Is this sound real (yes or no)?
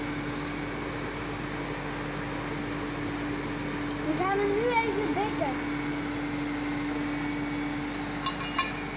yes